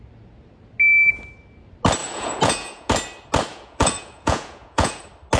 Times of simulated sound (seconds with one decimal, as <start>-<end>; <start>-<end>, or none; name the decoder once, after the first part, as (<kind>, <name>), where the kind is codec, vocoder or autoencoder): 2.0-2.9 (vocoder, Vocos); 3.5-5.0

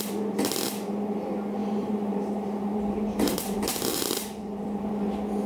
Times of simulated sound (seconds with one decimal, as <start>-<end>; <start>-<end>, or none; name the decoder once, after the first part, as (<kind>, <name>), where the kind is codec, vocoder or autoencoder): 1.6-4.9 (vocoder, BigVGAN v2)

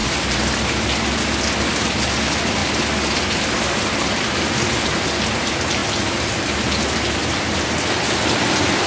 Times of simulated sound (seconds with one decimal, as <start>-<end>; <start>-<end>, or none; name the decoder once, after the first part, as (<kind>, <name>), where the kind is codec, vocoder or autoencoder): none

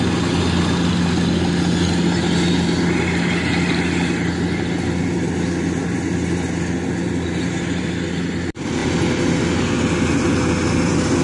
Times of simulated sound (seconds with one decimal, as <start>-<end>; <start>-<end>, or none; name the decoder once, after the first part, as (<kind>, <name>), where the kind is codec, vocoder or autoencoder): none

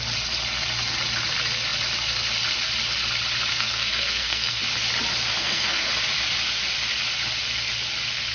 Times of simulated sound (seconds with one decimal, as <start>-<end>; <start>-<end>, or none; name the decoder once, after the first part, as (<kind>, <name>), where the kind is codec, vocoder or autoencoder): 3.5-4.6 (codec, SNAC); 5.4-5.9

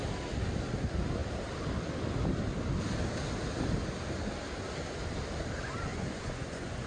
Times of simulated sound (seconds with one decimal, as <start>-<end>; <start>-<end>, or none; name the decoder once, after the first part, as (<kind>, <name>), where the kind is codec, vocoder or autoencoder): 5.9-6.9 (vocoder, Vocos)

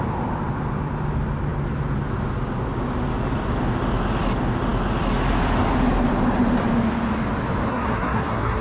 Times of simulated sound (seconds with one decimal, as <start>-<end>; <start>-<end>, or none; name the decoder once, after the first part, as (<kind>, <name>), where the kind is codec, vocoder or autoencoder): 7.7-8.6 (codec, SNAC)

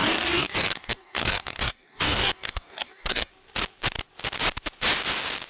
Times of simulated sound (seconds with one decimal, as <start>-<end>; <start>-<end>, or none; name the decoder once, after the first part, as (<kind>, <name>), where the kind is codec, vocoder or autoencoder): 0.0-3.3 (codec, DAC)